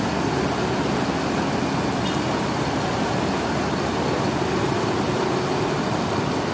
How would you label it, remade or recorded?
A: recorded